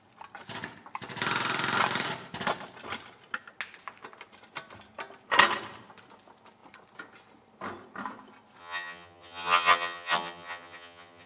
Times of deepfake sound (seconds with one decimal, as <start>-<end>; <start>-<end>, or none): 8.6-11.3